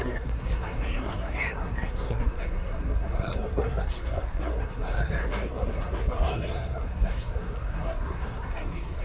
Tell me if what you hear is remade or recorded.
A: remade